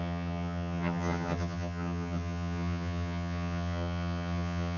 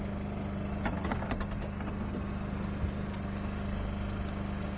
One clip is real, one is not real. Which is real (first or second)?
second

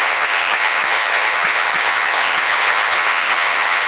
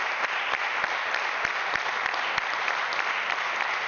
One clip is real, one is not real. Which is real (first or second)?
second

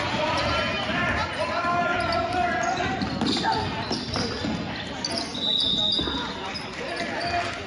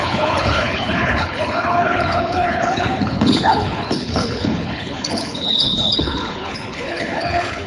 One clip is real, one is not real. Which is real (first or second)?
first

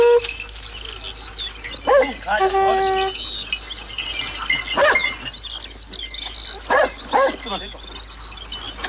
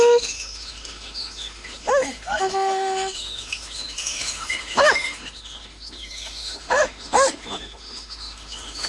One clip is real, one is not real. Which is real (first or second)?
first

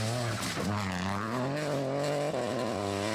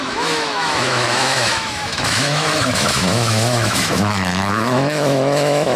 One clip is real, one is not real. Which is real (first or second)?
first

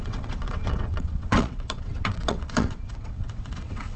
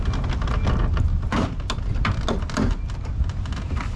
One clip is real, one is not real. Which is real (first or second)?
second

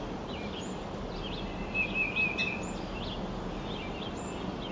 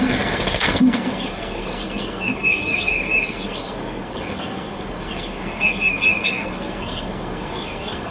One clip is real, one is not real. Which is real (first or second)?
first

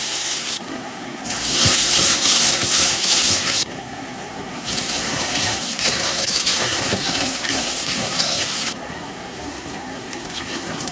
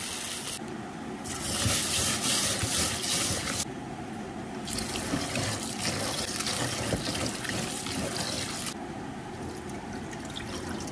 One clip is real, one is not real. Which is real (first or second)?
second